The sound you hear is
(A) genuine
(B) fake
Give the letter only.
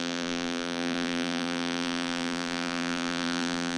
B